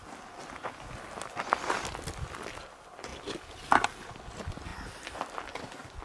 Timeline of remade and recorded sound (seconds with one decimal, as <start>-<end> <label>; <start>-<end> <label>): 0.0-6.0 recorded